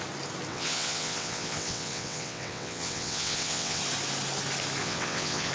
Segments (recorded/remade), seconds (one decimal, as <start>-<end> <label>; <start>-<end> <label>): 0.0-0.5 recorded; 0.5-3.8 remade; 3.8-4.8 recorded; 4.8-5.5 remade